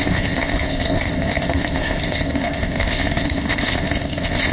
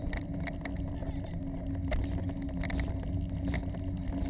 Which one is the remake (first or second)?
first